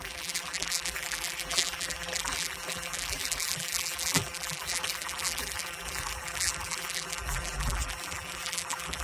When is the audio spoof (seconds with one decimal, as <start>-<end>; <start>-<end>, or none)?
0.0-9.0